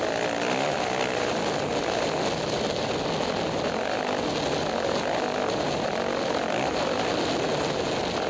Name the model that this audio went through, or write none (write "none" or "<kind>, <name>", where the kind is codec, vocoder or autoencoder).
none